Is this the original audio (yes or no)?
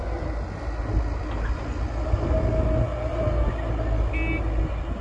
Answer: yes